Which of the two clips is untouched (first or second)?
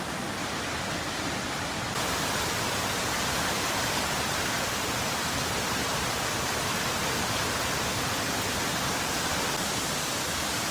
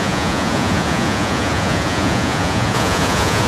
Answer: first